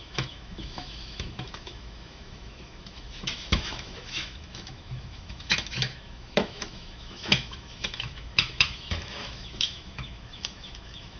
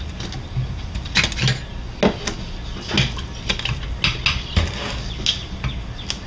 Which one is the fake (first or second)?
first